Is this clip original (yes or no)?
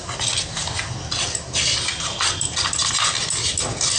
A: yes